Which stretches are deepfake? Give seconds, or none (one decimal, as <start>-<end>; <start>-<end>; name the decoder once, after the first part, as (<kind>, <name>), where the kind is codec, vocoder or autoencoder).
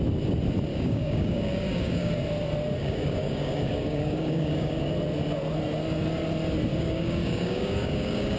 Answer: 0.7-2.1 (codec, DAC); 2.8-4.9; 6.7-8.4